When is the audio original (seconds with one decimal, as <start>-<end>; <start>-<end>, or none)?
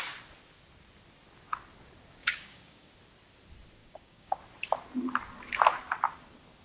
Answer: 0.0-2.2; 2.9-3.8; 4.4-6.6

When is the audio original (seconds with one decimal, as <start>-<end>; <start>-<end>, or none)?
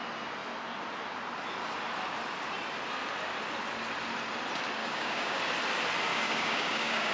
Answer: 0.0-4.8; 5.4-6.1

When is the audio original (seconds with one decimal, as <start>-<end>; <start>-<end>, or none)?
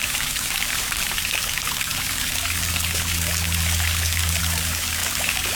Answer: none